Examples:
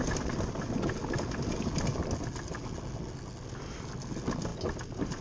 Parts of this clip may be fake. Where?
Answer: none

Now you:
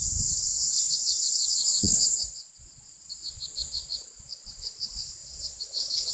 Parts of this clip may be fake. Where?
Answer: 0.5-4.2; 5.2-6.1

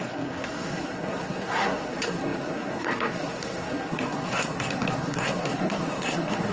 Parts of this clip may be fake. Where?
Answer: 0.0-6.5